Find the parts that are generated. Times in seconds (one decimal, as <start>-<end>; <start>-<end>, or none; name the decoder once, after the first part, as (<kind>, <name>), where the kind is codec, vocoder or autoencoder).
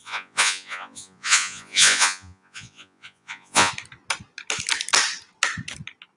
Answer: 0.0-3.7 (vocoder, Vocos)